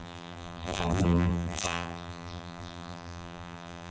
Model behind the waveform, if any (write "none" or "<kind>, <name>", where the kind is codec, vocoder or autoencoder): vocoder, BigVGAN v2